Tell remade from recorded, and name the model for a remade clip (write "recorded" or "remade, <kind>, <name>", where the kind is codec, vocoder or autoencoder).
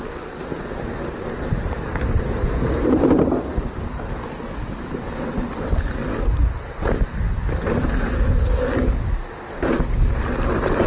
recorded